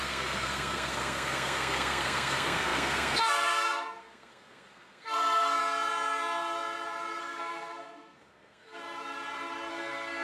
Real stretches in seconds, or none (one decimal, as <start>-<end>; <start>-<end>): 5.6-7.2; 8.8-9.7